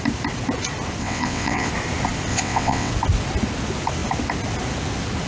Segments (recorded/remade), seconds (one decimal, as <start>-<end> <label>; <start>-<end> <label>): 0.0-1.0 recorded; 1.0-1.7 remade; 1.7-2.3 recorded; 2.3-2.9 remade; 2.9-5.3 recorded